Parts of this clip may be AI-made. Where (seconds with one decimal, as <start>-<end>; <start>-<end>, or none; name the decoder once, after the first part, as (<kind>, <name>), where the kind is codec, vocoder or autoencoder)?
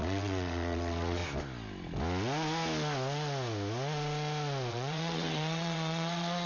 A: 0.0-1.2 (vocoder, WaveNeXt); 4.7-6.5